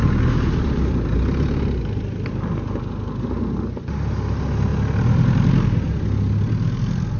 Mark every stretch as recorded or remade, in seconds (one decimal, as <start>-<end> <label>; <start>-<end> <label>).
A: 0.0-7.2 recorded